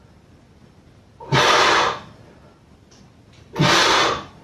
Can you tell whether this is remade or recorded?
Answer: recorded